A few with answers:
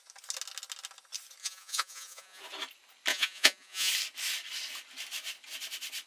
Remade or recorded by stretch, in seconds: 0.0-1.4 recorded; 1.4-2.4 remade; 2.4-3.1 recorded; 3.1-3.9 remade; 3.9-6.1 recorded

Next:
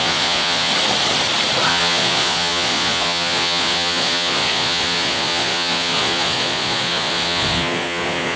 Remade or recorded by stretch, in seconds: 0.0-0.7 remade; 0.7-1.7 recorded; 1.7-8.4 remade

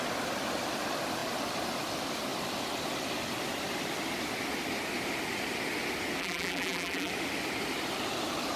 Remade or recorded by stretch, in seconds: 0.0-6.2 recorded; 6.2-7.1 remade; 7.1-8.6 recorded

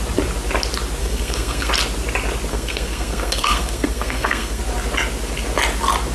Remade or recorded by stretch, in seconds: 0.0-1.0 recorded; 1.0-1.7 remade; 1.7-2.5 recorded; 2.5-4.6 remade; 4.6-6.1 recorded

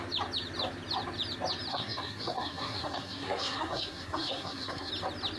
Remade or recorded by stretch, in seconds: 0.0-1.7 recorded; 1.7-4.9 remade; 4.9-5.4 recorded

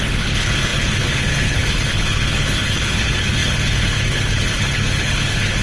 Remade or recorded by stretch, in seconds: 0.0-5.6 remade

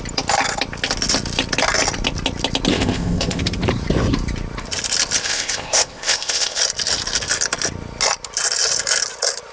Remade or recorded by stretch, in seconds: 0.0-2.7 recorded; 2.7-3.4 remade; 3.4-5.2 recorded; 5.2-6.6 remade; 6.6-9.5 recorded

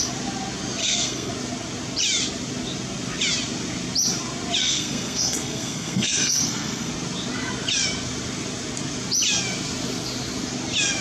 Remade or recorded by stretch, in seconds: 0.0-0.8 recorded; 0.8-1.3 remade; 1.3-4.6 recorded; 4.6-6.9 remade; 6.9-11.0 recorded